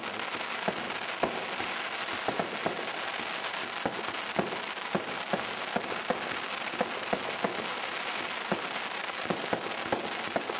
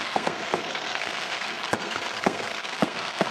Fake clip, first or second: second